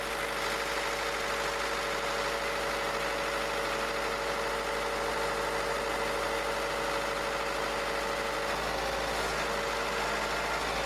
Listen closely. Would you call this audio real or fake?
real